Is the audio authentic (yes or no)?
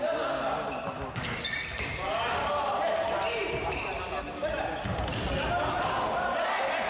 yes